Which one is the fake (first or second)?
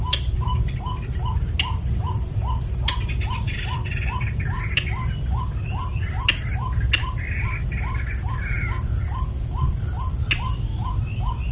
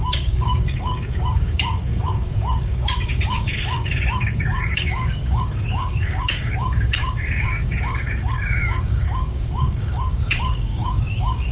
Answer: second